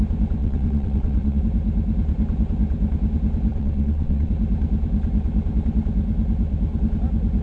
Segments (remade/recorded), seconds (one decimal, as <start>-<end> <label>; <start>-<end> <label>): 0.0-0.4 recorded; 0.4-1.4 remade; 1.4-3.5 recorded; 3.5-4.3 remade; 4.3-7.4 recorded